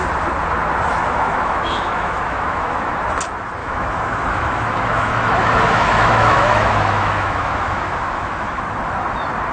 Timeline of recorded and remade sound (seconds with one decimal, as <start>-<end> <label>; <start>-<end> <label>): 0.0-0.9 recorded; 0.9-2.9 remade; 2.9-3.6 recorded; 3.6-8.6 remade; 8.6-9.5 recorded